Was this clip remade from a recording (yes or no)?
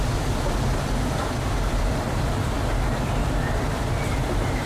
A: yes